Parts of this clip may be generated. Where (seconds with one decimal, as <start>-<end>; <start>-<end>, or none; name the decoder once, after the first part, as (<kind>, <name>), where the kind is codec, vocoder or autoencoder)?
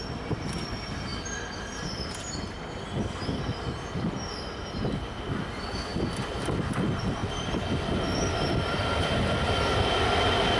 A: 0.0-1.1 (vocoder, BigVGAN v2); 4.9-7.2; 8.5-10.6